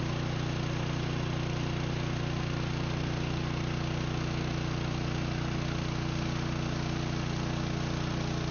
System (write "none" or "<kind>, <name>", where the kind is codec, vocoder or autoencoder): none